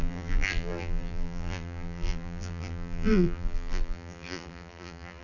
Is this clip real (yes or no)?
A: no